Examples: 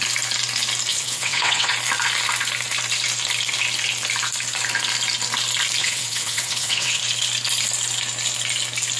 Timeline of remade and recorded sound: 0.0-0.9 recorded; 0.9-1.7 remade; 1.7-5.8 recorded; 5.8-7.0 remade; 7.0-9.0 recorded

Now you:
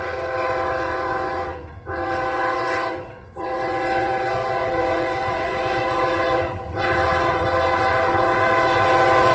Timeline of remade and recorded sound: 0.0-9.3 remade

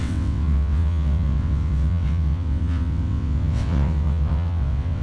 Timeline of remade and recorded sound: 0.0-5.0 remade

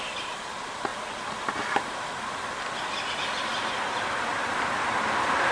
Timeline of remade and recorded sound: 0.0-5.5 recorded

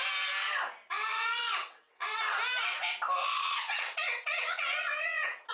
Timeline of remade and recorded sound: 0.0-1.1 recorded; 1.1-2.2 remade; 2.2-3.4 recorded; 3.4-5.5 remade

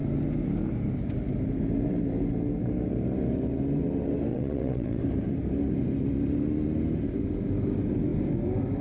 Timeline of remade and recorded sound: 0.0-4.3 recorded; 4.3-5.0 remade; 5.0-8.8 recorded